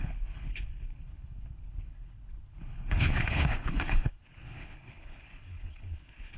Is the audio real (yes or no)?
no